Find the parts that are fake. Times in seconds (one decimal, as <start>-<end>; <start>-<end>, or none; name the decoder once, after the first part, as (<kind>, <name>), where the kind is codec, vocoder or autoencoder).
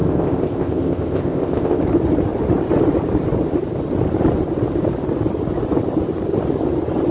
0.0-1.8 (codec, ZipCodec)